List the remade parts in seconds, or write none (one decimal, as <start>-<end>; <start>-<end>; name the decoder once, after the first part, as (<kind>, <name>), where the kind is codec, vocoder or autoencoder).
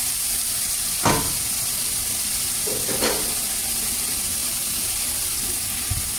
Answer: 4.4-5.0 (vocoder, BigVGAN v2)